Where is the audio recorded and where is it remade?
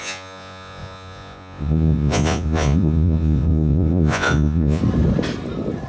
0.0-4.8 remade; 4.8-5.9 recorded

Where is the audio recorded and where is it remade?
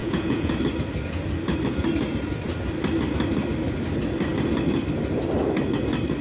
0.0-0.6 remade; 0.6-6.2 recorded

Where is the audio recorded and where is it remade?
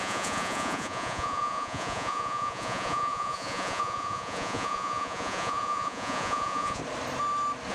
0.0-6.8 remade; 6.8-7.7 recorded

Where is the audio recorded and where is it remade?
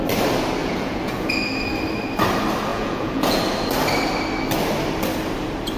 0.0-0.6 recorded; 0.6-1.3 remade; 1.3-2.7 recorded; 2.7-3.4 remade; 3.4-5.8 recorded